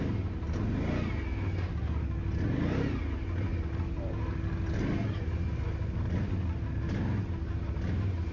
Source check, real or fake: real